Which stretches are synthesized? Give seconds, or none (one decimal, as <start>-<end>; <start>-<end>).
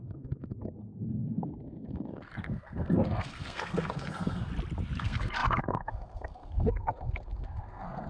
0.0-4.5; 5.0-8.1